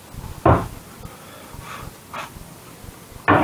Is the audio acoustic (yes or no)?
yes